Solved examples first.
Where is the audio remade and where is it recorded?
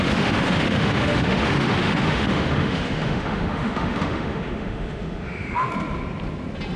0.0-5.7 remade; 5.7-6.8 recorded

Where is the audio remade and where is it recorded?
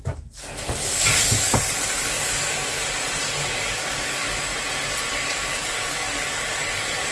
0.0-2.8 remade; 2.8-3.3 recorded; 3.3-4.5 remade; 4.5-5.1 recorded; 5.1-7.1 remade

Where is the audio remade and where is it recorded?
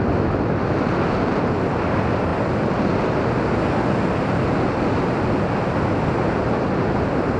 0.0-7.4 recorded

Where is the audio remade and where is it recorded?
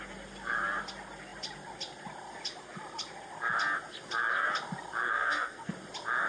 0.0-5.0 recorded; 5.0-5.7 remade; 5.7-6.3 recorded